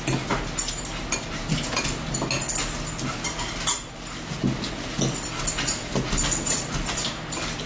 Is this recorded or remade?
recorded